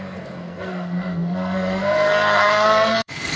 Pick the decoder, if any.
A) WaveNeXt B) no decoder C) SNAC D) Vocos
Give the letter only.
C